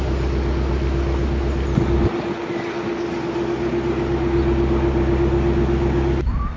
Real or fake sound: real